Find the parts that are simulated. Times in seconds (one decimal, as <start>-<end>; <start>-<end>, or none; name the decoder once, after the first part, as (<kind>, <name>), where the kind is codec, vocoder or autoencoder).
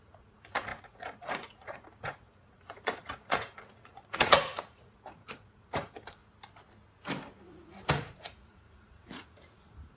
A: 0.0-6.2 (vocoder, Vocos); 8.0-10.0